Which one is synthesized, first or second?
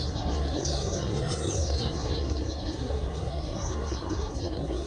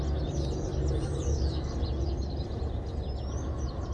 first